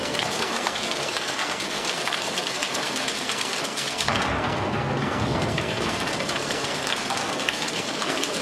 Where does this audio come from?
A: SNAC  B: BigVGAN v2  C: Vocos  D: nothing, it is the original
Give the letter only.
A